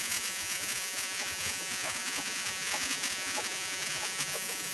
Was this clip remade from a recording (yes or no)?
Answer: yes